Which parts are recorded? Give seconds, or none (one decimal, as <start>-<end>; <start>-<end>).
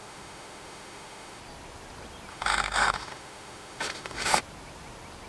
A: 1.4-2.3; 4.4-5.3